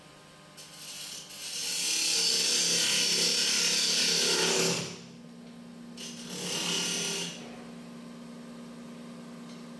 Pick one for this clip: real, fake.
real